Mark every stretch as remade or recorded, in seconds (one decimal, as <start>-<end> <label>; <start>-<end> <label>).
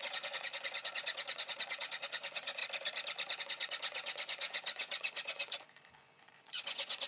0.0-2.6 remade; 2.6-3.4 recorded; 3.4-7.1 remade